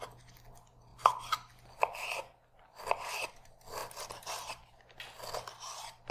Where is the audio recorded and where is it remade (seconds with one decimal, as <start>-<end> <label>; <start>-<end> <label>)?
0.0-6.1 recorded